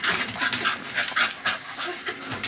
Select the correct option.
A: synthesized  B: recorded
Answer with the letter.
B